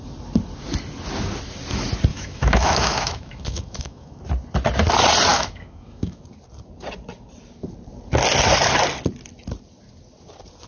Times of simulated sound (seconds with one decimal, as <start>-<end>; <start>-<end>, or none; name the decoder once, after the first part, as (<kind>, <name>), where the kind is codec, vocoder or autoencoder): 2.1-4.2 (autoencoder, DAC-VAE); 5.3-6.2